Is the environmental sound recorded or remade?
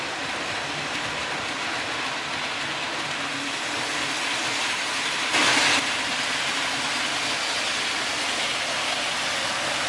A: recorded